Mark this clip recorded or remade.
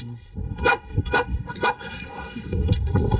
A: remade